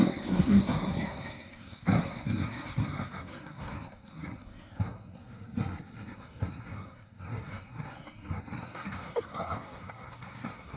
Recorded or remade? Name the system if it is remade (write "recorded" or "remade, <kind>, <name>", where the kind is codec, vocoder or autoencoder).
remade, codec, SNAC